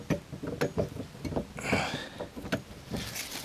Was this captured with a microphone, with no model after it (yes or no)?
yes